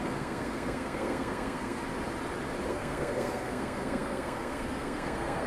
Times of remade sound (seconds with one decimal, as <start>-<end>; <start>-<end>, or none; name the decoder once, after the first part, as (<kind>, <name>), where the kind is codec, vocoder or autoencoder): 0.0-1.8 (codec, SNAC); 2.7-5.5